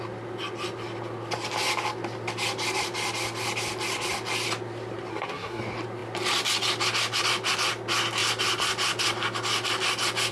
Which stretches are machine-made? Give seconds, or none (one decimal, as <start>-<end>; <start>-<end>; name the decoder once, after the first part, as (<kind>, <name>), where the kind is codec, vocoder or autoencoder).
5.1-5.6 (codec, SNAC)